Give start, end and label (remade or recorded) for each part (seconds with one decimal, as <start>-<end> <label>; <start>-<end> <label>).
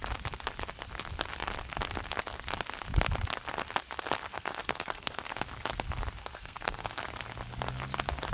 0.0-4.3 recorded; 4.3-5.2 remade; 5.2-6.2 recorded; 6.2-6.9 remade; 6.9-8.3 recorded